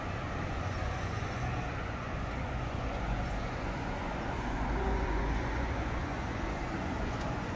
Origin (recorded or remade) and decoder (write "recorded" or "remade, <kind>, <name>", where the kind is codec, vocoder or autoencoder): remade, vocoder, Vocos